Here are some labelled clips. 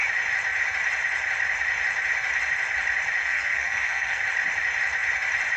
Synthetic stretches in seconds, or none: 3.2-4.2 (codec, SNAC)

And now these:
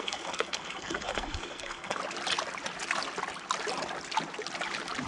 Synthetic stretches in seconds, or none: 0.0-2.0 (codec, SNAC)

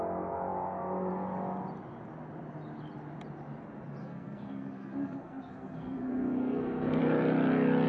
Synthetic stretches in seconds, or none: 4.0-7.0 (codec, SNAC)